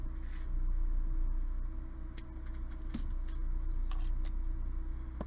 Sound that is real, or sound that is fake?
real